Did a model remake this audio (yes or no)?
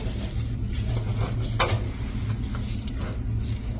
no